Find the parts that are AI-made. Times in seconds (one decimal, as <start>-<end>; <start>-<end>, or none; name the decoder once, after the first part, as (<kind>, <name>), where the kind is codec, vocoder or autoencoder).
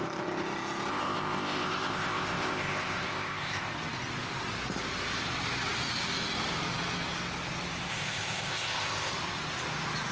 0.9-3.7 (codec, ZipCodec); 7.9-9.1